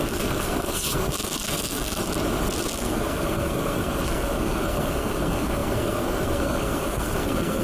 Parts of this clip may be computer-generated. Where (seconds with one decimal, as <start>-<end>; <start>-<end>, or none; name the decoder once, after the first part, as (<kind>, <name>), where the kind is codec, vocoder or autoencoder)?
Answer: 0.0-2.0 (codec, SNAC); 2.8-7.6